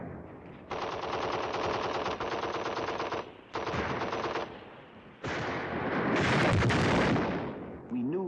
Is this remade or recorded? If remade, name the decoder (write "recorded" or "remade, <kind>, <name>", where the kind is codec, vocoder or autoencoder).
recorded